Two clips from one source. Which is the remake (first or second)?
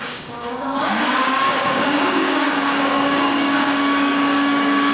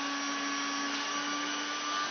first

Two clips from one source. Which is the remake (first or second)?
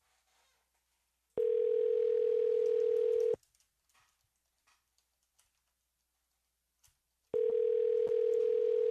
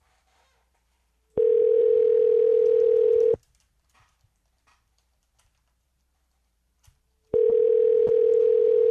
second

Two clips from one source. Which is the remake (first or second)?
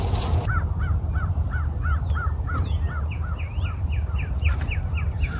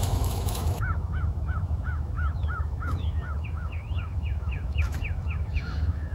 second